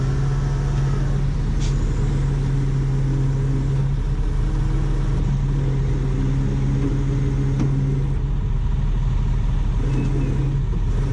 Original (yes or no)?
yes